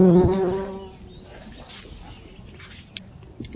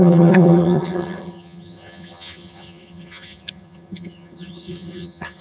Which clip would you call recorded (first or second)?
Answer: first